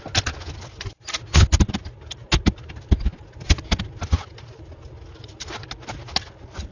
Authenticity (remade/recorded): recorded